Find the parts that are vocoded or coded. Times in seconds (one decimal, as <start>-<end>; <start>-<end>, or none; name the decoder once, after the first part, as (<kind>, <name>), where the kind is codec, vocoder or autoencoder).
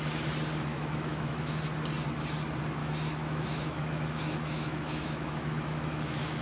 0.7-1.6 (autoencoder, DAC-VAE); 2.8-6.4